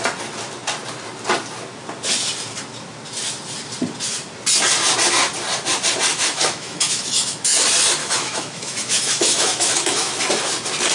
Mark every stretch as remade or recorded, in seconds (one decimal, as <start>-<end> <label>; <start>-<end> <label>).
0.0-6.1 recorded; 6.1-7.6 remade; 7.6-8.0 recorded; 8.0-10.3 remade; 10.3-10.9 recorded